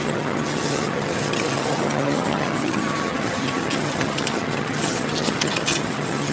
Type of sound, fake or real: fake